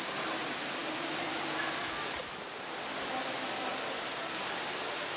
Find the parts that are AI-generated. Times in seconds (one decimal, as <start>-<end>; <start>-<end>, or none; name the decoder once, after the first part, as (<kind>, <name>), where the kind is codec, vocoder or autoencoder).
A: none